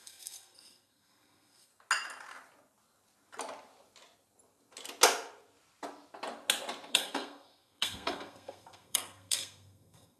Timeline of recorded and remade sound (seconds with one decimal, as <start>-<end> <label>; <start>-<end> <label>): 0.0-1.7 remade; 1.7-6.9 recorded; 6.9-10.2 remade